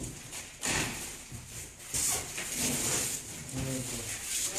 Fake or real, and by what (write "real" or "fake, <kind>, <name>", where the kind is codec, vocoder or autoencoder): real